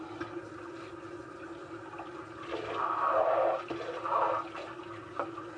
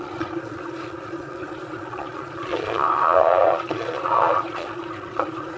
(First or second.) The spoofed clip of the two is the second